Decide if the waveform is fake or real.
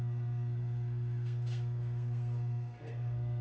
fake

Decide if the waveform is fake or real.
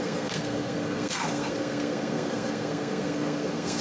fake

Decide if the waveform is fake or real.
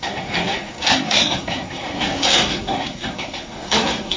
fake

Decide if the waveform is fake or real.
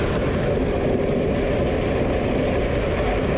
real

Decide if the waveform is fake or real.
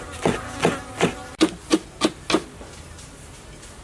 real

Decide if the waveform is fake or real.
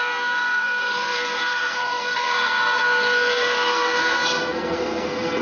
fake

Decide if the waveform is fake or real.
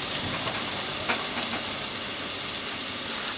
real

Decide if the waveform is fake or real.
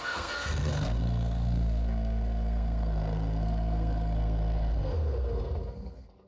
fake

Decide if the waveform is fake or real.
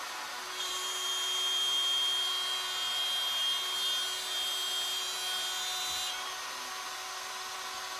real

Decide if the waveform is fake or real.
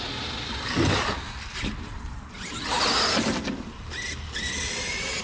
real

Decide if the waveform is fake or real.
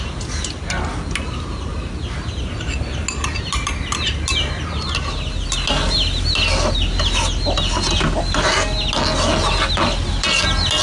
real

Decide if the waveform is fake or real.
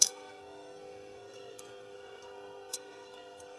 fake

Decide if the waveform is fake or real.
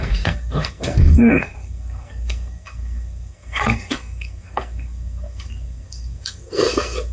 fake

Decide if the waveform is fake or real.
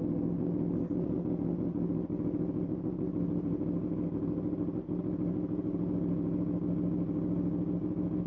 real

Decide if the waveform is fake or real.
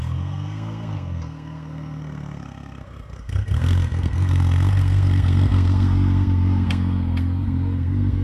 fake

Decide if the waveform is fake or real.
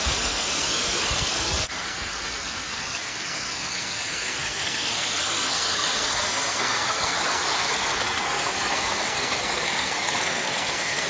fake